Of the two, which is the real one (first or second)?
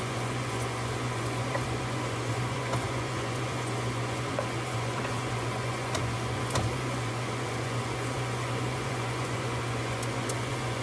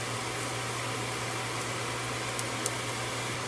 second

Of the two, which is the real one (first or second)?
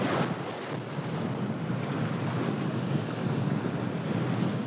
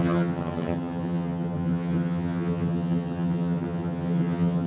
first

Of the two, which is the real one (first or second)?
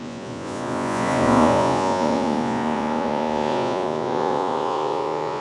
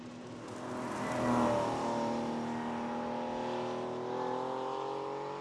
second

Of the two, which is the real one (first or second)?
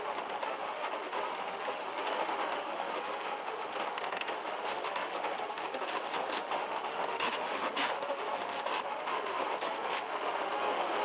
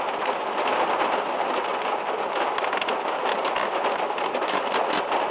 second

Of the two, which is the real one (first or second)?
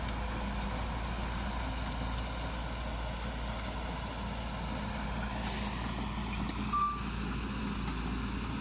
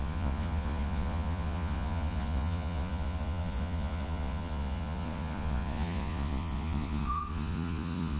first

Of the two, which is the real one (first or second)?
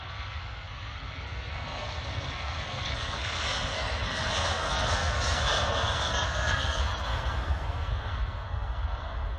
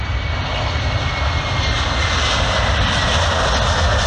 second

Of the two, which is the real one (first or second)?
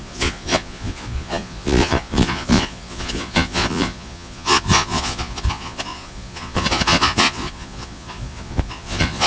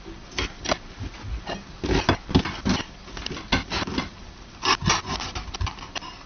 second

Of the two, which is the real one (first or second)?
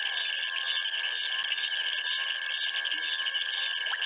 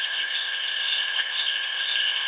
first